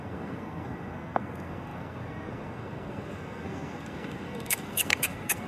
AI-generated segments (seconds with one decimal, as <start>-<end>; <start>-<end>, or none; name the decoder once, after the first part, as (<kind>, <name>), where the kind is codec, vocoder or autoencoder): 0.0-5.5 (codec, SNAC)